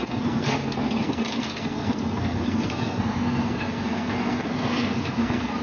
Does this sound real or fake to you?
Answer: fake